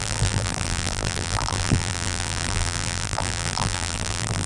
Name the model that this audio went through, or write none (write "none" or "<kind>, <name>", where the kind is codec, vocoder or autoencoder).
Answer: vocoder, BigVGAN v2